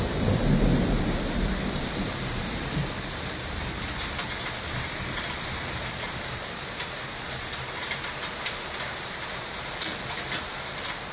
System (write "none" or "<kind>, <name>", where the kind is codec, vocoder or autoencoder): vocoder, BigVGAN v2